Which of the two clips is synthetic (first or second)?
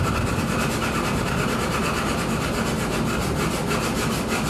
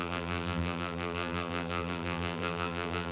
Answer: second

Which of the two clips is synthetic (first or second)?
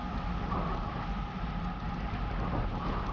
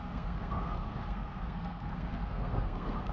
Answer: second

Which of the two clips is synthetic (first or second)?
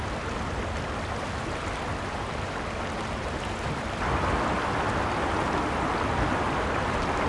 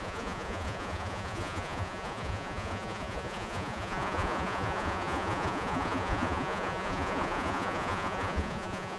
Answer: second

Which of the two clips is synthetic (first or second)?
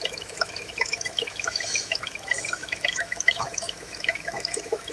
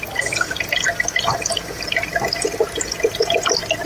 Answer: first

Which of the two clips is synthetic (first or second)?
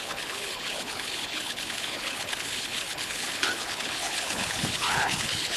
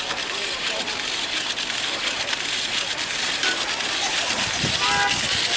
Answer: first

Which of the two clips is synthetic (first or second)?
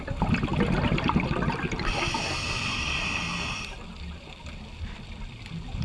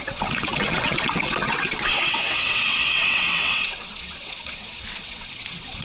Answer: second